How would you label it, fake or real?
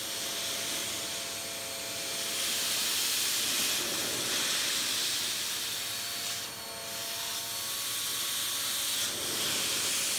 real